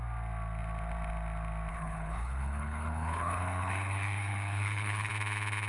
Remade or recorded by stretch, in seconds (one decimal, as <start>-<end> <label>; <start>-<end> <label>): 0.0-1.7 recorded; 1.7-5.1 remade; 5.1-5.7 recorded